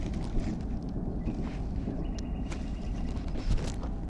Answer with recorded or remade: recorded